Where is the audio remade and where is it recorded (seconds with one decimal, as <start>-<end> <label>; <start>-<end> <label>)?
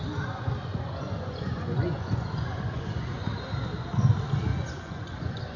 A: 0.0-0.6 recorded; 0.6-3.3 remade; 3.3-4.5 recorded; 4.5-5.6 remade